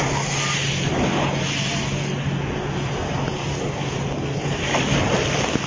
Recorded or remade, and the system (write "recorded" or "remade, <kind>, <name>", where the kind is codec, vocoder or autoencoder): recorded